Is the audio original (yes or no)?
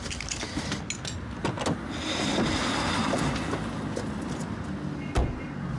yes